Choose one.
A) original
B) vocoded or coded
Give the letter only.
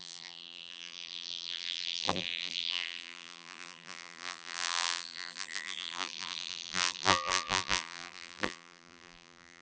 B